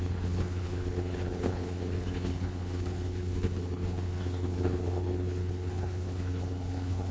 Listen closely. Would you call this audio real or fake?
fake